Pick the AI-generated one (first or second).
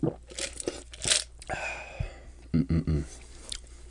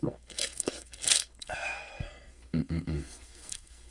second